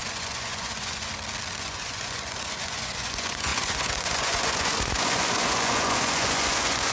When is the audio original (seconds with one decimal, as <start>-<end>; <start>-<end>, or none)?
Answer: 1.1-1.6